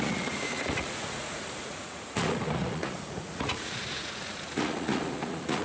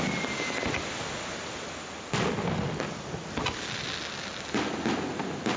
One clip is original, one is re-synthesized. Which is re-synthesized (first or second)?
first